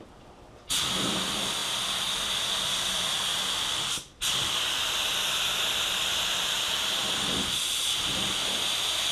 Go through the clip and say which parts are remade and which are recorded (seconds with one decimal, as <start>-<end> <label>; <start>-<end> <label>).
0.0-9.1 recorded